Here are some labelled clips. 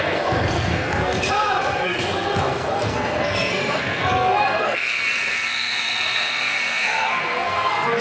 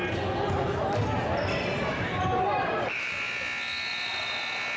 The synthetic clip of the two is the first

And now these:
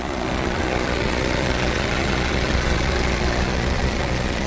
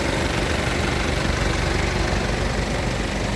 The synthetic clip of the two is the first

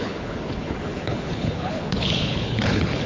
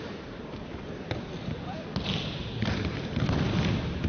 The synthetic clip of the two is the first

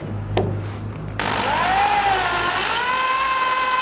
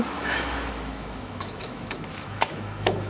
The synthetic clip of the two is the second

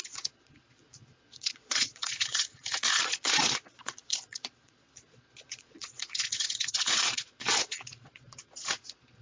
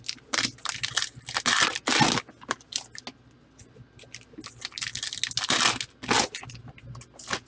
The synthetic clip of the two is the first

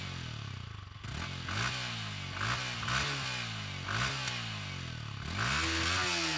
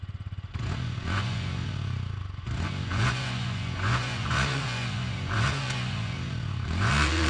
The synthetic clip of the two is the second